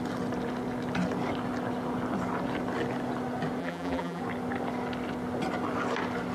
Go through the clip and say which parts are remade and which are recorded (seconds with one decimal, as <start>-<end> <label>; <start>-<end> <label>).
0.0-3.6 recorded; 3.6-4.2 remade; 4.2-6.3 recorded